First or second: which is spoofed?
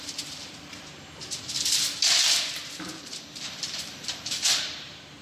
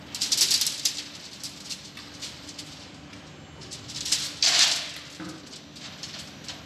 first